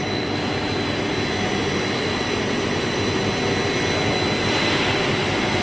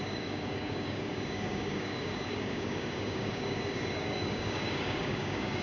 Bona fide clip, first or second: first